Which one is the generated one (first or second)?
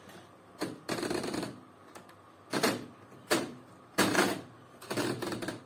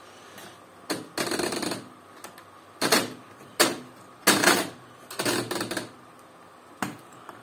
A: first